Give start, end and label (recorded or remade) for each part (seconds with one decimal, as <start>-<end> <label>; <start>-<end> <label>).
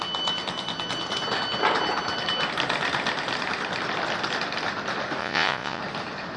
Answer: 0.0-5.2 recorded; 5.2-5.8 remade; 5.8-6.4 recorded